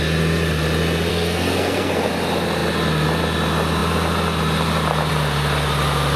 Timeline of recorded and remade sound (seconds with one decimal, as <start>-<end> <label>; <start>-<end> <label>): 0.0-1.1 recorded; 1.1-2.1 remade; 2.1-6.2 recorded